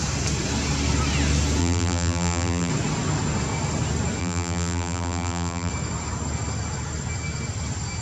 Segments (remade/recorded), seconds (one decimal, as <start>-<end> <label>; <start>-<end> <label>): 0.0-1.6 recorded; 1.6-2.7 remade; 2.7-4.2 recorded; 4.2-5.7 remade; 5.7-8.0 recorded